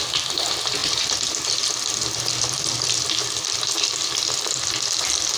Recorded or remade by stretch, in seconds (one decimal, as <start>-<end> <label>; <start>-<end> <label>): 0.0-5.4 remade